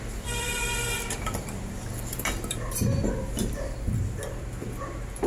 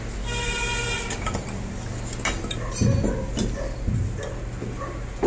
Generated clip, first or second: first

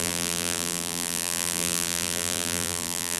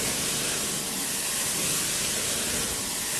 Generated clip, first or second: first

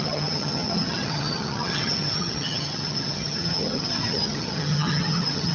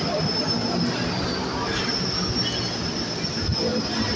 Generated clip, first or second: first